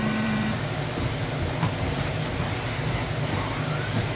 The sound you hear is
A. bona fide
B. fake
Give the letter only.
B